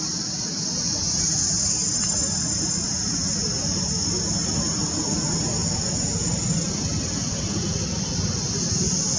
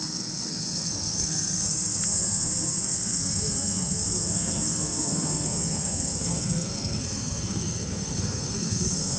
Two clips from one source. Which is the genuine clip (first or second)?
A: first